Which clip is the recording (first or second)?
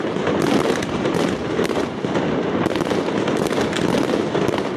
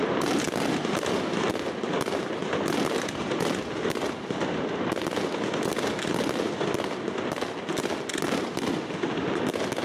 second